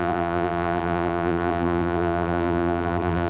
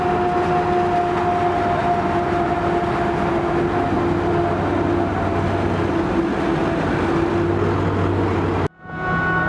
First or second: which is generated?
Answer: first